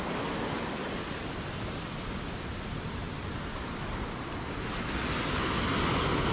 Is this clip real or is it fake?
real